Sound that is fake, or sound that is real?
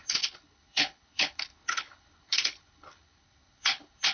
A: fake